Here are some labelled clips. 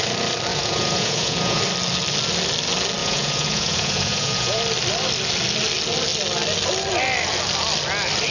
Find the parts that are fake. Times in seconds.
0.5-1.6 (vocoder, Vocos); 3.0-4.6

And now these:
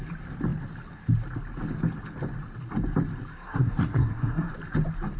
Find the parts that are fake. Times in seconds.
3.3-4.5 (codec, SNAC)

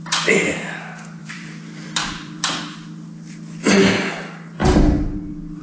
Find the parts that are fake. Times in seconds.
1.2-2.6 (vocoder, BigVGAN v2)

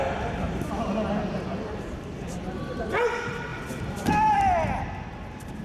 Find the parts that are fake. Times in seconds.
none

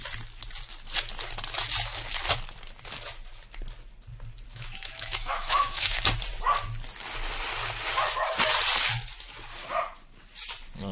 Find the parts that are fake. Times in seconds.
4.5-6.0 (autoencoder, DAC-VAE)

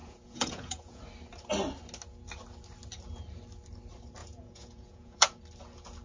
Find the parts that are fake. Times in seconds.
0.0-1.0 (vocoder, Vocos); 4.2-5.4